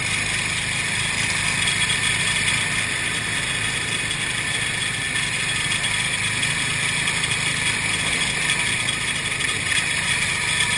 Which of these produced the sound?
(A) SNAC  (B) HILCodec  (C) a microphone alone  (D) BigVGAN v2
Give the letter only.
C